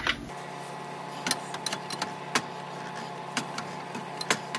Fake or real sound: real